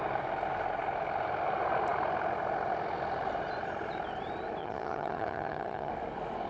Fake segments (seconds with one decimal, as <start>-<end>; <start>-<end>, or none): 4.6-5.9